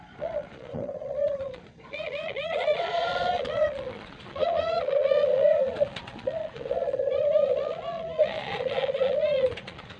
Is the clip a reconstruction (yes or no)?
yes